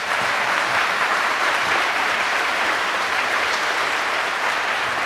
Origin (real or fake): fake